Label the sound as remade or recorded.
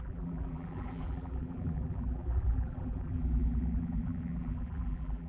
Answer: remade